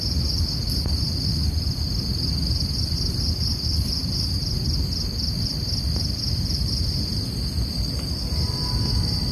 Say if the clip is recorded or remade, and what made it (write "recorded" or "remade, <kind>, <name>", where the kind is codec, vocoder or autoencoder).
recorded